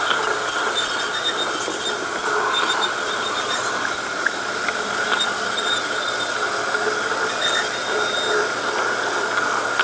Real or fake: real